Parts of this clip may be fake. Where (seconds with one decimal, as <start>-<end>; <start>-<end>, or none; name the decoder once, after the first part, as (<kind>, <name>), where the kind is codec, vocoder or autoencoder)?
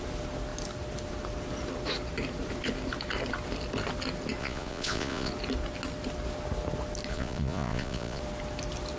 4.4-5.3 (vocoder, Vocos); 7.1-8.2